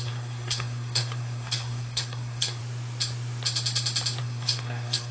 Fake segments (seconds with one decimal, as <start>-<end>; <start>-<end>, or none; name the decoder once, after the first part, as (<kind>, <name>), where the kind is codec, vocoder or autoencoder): 0.0-2.6 (codec, SNAC); 4.2-5.1